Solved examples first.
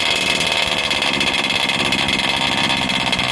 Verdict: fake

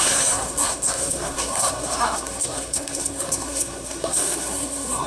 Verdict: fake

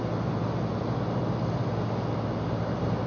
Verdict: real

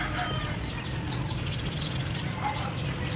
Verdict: real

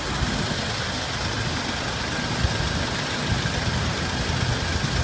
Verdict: real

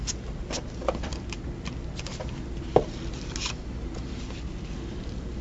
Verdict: real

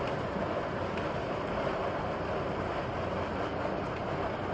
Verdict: real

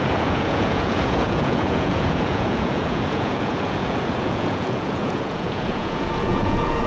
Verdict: fake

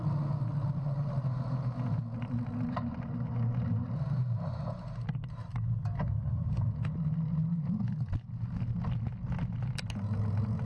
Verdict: real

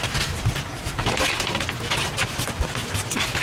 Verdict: real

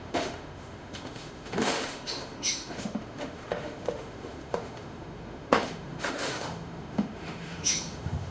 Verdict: fake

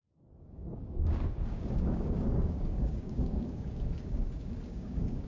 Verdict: fake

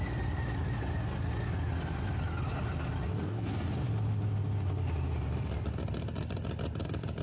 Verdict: real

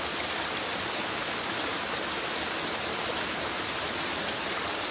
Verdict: real